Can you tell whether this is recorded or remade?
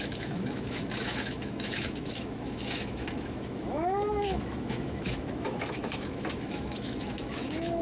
remade